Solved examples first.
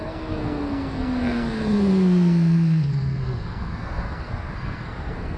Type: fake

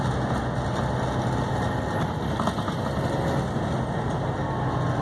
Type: real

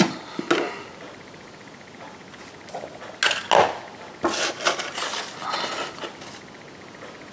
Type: real